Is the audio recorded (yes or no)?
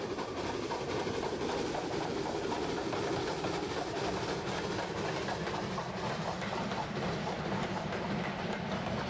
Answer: yes